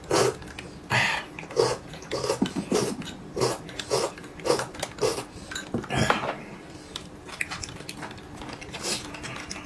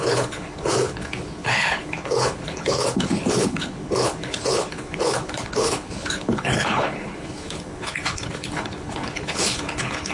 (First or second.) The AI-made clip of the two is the second